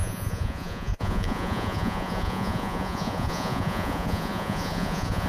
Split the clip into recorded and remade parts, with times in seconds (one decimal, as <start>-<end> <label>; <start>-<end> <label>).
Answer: 0.0-5.3 remade